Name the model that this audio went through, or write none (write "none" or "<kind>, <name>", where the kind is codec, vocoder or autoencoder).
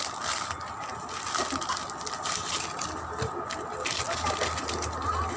none